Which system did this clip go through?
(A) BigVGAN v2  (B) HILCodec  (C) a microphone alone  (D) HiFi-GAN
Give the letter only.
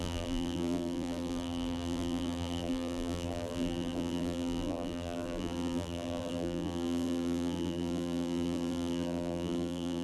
A